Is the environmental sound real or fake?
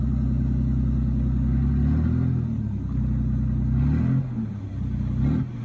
real